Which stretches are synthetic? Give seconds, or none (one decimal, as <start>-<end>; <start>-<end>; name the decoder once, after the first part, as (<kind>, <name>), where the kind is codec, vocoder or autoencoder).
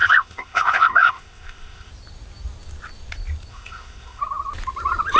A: 0.0-1.9 (codec, ZipCodec); 3.5-4.2